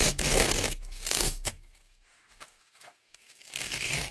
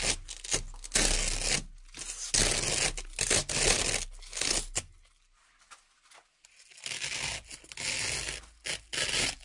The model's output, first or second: first